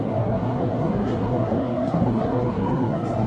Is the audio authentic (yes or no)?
no